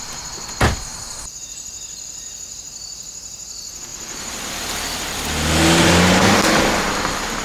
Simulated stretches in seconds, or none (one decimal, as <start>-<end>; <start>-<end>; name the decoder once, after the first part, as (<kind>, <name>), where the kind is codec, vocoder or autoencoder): 0.9-1.4 (vocoder, BigVGAN v2); 3.9-5.2